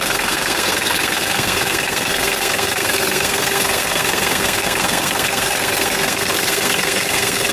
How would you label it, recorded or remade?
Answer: remade